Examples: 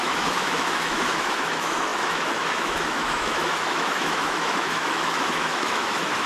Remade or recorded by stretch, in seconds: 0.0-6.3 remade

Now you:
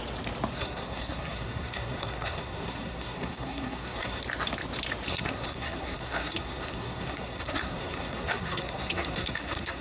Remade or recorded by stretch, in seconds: 0.0-0.5 recorded; 0.5-4.2 remade; 4.2-5.1 recorded; 5.1-9.8 remade

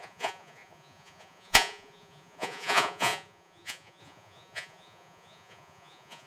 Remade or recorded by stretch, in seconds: 0.0-6.3 remade

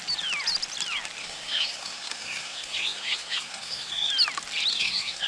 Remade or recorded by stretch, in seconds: 0.0-1.2 recorded; 1.2-4.1 remade; 4.1-4.7 recorded; 4.7-5.3 remade

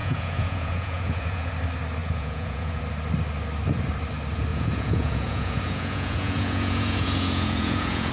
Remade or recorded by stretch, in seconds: 0.0-1.5 remade; 1.5-2.0 recorded; 2.0-2.8 remade; 2.8-4.5 recorded; 4.5-8.1 remade

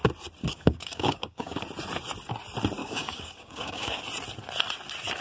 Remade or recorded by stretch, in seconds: 0.0-0.4 recorded; 0.4-1.6 remade; 1.6-2.8 recorded; 2.8-4.0 remade; 4.0-5.2 recorded

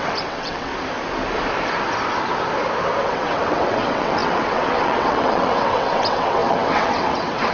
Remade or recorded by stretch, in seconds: 0.0-0.7 remade; 0.7-3.0 recorded; 3.0-7.5 remade